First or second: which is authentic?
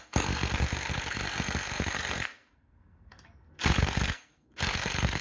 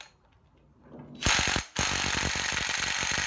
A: second